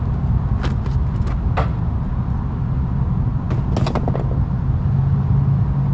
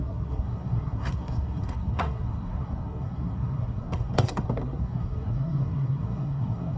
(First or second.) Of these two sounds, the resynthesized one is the second